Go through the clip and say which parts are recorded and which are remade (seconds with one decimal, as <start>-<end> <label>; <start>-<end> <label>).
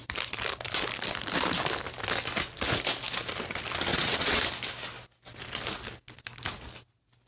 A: 0.0-3.9 recorded; 3.9-4.4 remade; 4.4-7.3 recorded